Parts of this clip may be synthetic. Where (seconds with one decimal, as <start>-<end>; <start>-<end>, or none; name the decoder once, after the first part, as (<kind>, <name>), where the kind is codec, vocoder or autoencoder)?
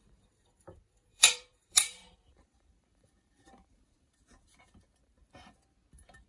1.1-4.5 (vocoder, BigVGAN v2)